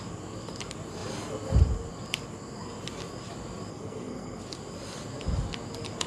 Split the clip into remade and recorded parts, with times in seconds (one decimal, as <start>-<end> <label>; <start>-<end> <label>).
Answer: 0.0-3.7 recorded; 3.7-4.4 remade; 4.4-6.1 recorded